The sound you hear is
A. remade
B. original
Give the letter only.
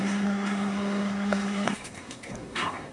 A